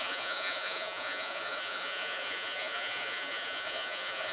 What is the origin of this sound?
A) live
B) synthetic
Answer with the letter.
B